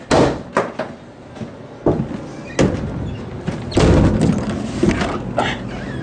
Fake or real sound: real